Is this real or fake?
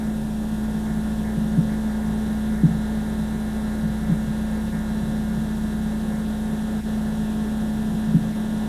real